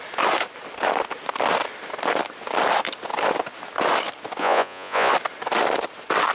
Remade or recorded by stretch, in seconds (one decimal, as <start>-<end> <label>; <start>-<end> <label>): 0.0-4.4 recorded; 4.4-5.1 remade; 5.1-6.3 recorded